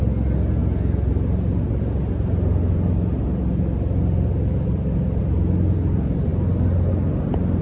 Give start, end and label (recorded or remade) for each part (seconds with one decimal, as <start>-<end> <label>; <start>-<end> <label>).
0.0-7.6 recorded